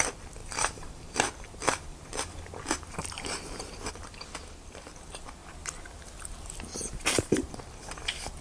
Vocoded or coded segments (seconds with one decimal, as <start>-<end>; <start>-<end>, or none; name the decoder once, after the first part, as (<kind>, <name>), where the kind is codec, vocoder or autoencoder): 0.4-3.9 (vocoder, BigVGAN v2); 6.7-7.5